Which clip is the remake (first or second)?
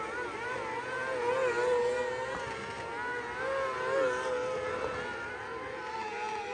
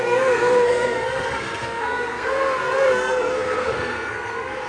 second